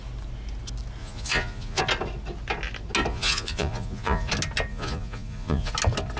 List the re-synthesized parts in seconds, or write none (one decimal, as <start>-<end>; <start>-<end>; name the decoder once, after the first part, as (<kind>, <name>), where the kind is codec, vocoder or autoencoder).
1.0-1.8 (vocoder, Vocos); 3.1-4.3; 4.7-5.7